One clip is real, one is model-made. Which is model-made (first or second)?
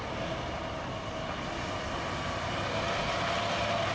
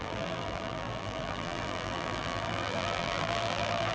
second